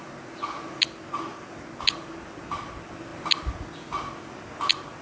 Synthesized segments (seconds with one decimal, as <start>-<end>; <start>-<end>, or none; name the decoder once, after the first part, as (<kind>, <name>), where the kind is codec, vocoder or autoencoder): none